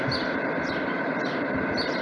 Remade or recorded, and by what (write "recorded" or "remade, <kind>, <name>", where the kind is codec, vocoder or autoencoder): recorded